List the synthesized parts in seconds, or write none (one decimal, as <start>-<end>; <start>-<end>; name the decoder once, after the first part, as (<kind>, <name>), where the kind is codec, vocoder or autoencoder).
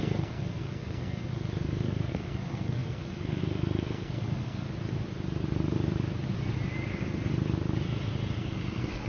0.0-4.7 (codec, SNAC); 8.4-9.1